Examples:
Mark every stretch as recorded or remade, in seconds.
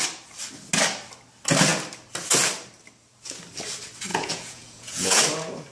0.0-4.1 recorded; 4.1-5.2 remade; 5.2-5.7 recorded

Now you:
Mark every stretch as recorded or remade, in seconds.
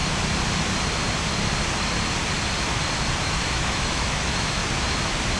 0.0-3.2 recorded; 3.2-4.6 remade; 4.6-5.4 recorded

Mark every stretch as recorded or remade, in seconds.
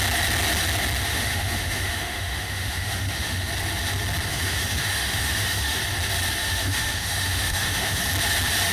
0.0-1.1 recorded; 1.1-3.5 remade; 3.5-4.3 recorded; 4.3-5.8 remade; 5.8-6.4 recorded; 6.4-8.0 remade; 8.0-8.7 recorded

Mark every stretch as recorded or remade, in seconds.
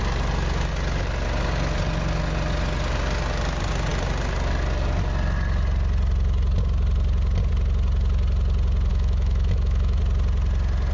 0.0-8.9 recorded; 8.9-10.0 remade; 10.0-10.9 recorded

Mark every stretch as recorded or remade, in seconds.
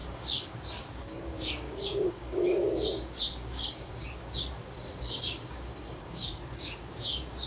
0.0-7.5 remade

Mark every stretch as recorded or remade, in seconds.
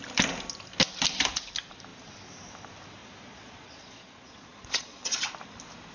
0.0-3.0 recorded; 3.0-5.3 remade; 5.3-5.9 recorded